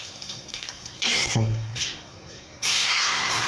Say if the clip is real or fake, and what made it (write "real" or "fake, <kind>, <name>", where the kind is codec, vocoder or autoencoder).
fake, codec, SNAC